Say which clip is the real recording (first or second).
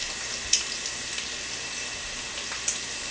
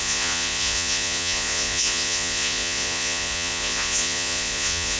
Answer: first